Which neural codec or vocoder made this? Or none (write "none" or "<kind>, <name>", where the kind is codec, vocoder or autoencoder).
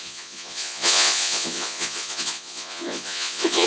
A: vocoder, Vocos